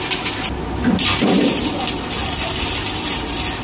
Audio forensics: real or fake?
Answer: real